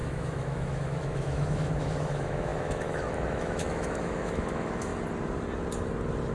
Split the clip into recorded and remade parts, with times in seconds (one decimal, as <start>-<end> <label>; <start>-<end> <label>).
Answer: 0.0-4.9 remade; 4.9-6.3 recorded